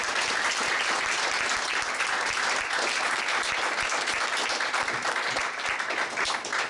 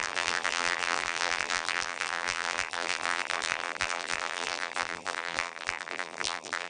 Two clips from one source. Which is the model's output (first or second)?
second